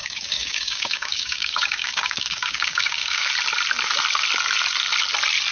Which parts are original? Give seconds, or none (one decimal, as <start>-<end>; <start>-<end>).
3.3-5.5